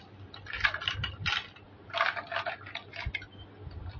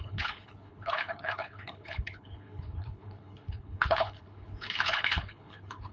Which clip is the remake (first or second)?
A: second